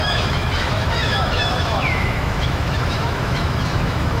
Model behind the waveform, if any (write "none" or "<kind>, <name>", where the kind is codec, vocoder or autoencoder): autoencoder, DAC-VAE